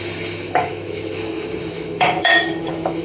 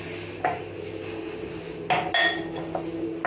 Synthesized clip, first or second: first